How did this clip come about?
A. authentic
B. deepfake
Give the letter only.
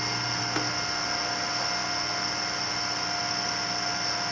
A